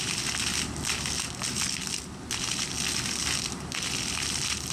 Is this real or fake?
real